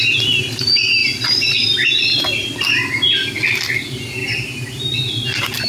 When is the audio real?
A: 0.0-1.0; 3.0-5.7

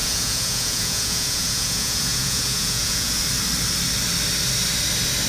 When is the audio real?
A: 3.2-5.3

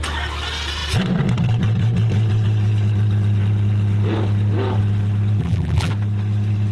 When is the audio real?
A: 0.0-5.4; 5.9-6.7

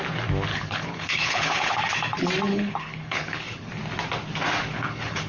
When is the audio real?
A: 0.0-0.5; 1.8-2.5; 3.7-4.6

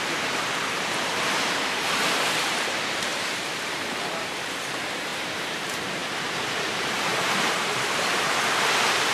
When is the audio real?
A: 3.1-3.6